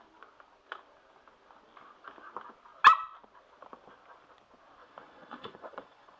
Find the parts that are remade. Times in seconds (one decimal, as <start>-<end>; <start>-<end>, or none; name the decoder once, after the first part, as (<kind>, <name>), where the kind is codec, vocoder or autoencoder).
4.8-6.2 (vocoder, Vocos)